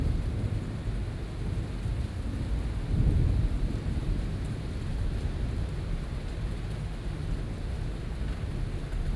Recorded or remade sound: recorded